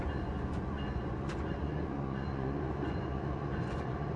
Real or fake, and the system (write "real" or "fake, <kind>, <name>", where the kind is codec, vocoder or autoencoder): fake, vocoder, Vocos